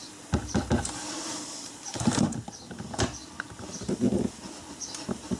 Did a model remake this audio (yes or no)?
no